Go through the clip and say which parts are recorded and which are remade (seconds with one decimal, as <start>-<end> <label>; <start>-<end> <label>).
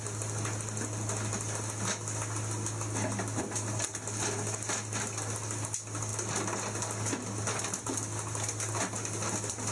0.0-9.7 recorded